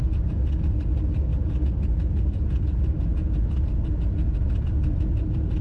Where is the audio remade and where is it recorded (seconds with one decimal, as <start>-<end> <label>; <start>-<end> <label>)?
0.0-5.6 recorded